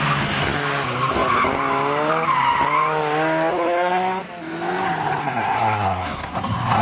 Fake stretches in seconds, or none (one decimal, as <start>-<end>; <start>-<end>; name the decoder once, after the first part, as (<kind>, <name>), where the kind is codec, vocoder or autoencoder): 3.5-4.2 (codec, SNAC); 5.2-6.8